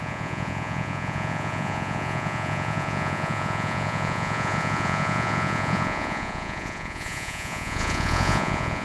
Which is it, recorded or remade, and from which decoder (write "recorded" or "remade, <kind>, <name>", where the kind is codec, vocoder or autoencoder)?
remade, vocoder, Vocos